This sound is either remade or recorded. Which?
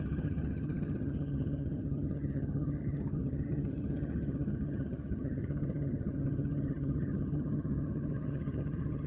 remade